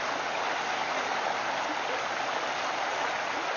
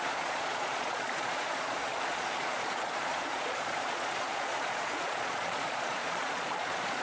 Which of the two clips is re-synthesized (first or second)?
second